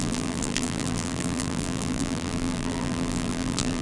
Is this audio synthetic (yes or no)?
yes